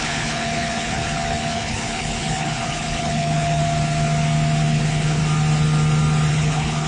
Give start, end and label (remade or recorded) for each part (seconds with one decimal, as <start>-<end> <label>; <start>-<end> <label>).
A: 0.0-3.6 remade; 3.6-4.7 recorded; 4.7-5.2 remade; 5.2-6.3 recorded; 6.3-6.9 remade